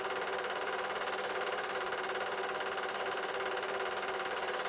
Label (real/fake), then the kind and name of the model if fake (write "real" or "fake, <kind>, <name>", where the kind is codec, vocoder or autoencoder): real